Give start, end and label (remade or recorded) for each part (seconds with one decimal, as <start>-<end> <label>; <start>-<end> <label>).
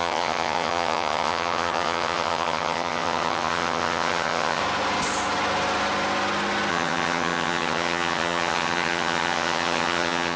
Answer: 0.0-4.6 remade; 4.6-6.7 recorded; 6.7-10.4 remade